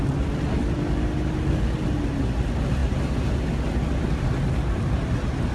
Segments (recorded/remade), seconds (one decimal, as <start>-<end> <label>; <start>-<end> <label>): 0.0-5.5 recorded